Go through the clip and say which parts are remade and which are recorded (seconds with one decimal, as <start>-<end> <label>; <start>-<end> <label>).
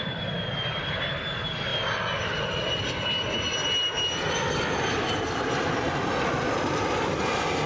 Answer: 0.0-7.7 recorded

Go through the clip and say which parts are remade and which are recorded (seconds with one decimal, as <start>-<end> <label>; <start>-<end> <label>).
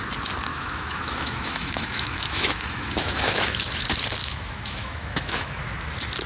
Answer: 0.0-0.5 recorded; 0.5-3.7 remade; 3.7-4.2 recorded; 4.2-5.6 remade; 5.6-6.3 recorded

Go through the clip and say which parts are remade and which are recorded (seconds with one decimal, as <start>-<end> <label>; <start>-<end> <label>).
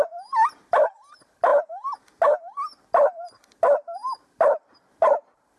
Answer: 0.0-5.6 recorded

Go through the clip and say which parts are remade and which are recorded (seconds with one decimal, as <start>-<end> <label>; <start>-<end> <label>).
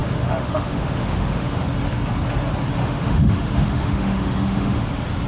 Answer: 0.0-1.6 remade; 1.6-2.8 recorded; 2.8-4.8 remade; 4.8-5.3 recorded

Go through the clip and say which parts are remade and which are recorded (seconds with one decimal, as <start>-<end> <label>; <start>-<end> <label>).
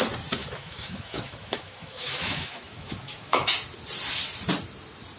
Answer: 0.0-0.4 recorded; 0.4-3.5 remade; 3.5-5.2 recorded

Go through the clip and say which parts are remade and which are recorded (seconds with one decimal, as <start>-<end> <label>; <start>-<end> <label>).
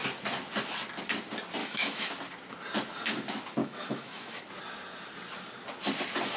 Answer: 0.0-1.6 recorded; 1.6-2.1 remade; 2.1-3.6 recorded; 3.6-4.4 remade; 4.4-6.4 recorded